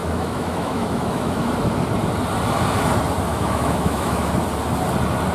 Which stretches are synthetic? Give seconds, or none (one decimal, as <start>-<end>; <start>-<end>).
0.0-1.5; 3.3-4.3